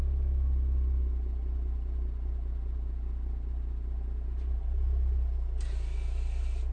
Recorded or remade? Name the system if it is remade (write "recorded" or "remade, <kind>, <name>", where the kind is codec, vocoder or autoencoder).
recorded